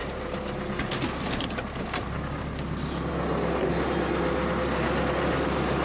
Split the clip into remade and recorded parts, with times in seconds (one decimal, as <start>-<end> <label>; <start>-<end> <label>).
0.0-5.8 recorded